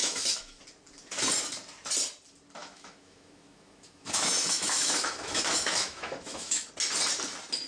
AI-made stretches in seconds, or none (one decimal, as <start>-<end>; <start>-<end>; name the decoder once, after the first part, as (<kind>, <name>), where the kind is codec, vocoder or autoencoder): 0.0-0.6 (autoencoder, DAC-VAE); 2.6-6.7